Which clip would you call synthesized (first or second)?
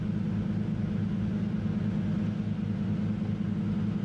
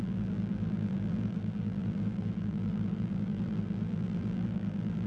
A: second